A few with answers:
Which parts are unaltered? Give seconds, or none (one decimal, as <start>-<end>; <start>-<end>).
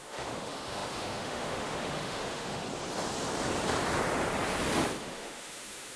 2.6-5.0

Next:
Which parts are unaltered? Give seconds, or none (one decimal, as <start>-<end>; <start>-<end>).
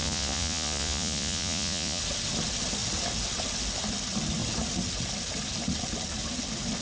2.0-6.8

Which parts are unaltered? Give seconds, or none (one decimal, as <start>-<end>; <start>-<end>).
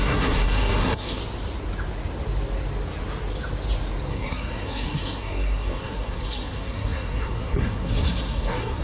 1.2-4.1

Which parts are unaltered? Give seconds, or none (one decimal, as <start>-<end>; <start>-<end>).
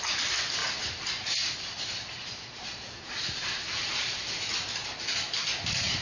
0.0-0.6; 4.2-6.0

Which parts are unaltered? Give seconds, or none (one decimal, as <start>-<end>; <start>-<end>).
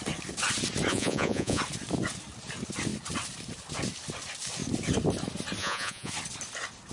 0.0-0.9; 1.6-5.6; 6.1-6.9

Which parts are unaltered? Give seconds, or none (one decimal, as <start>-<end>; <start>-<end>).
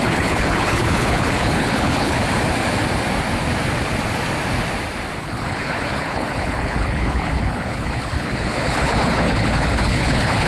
2.2-5.2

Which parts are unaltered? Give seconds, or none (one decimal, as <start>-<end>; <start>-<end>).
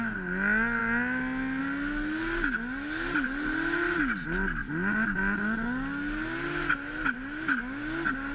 0.0-8.3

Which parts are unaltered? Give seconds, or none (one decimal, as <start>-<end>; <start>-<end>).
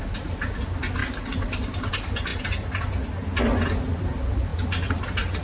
0.0-1.0; 1.9-2.3; 2.8-5.4